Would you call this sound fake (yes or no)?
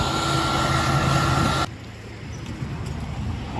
no